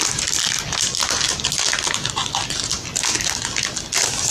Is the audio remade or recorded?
recorded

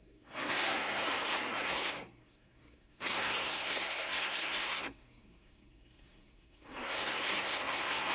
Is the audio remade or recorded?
remade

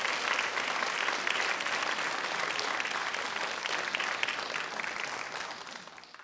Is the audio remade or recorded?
recorded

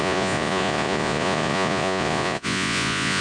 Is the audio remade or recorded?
remade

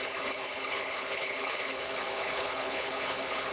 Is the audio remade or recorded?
remade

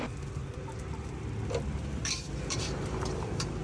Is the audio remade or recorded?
recorded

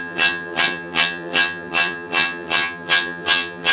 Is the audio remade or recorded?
remade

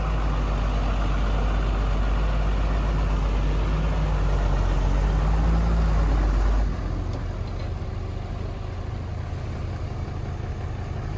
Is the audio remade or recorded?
recorded